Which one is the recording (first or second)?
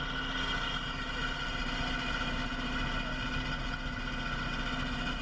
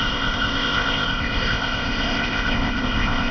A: first